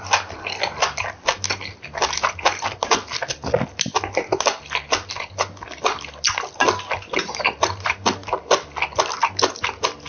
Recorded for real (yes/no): yes